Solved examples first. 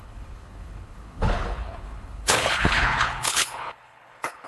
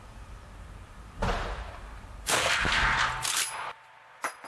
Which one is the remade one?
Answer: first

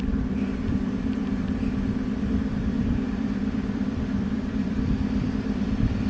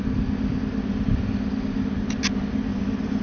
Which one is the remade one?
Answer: first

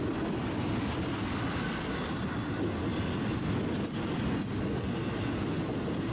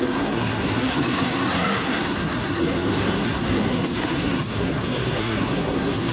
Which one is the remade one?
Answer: second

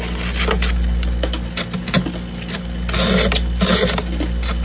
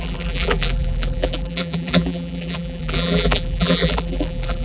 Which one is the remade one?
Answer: second